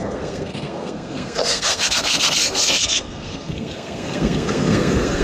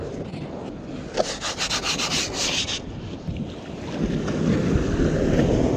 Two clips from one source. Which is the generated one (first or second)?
first